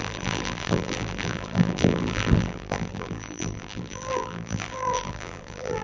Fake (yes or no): yes